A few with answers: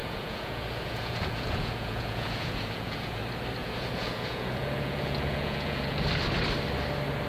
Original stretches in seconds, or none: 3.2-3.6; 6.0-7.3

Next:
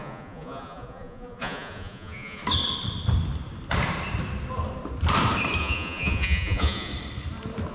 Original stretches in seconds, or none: 2.4-5.6; 6.9-7.7

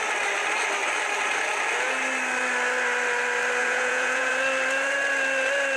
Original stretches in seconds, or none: 0.0-3.6; 4.3-5.8

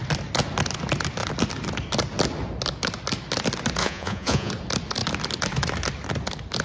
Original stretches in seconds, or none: 0.0-3.8; 4.5-6.6

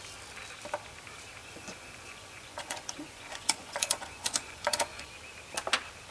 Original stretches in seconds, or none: 0.0-1.4; 5.1-6.1

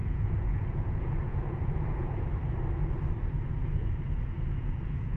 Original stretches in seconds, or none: 2.3-3.2

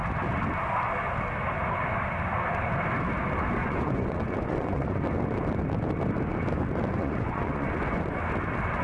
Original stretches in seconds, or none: 0.0-3.6; 5.0-7.0; 8.2-8.8